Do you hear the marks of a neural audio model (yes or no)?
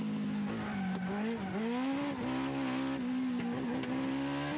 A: no